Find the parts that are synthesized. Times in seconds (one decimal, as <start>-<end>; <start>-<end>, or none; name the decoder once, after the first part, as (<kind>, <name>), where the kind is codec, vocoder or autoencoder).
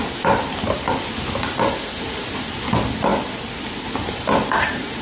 none